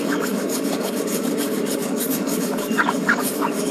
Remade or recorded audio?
remade